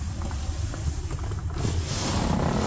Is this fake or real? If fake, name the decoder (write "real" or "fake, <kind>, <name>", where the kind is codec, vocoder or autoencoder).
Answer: real